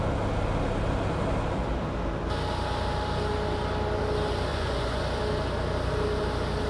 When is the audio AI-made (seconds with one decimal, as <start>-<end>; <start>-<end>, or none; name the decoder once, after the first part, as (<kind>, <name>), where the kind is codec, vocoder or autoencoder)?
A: 4.5-5.0 (vocoder, Vocos)